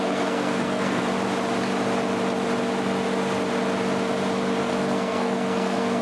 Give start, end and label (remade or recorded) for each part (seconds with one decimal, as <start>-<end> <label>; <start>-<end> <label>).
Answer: 0.0-1.0 remade; 1.0-4.6 recorded; 4.6-6.0 remade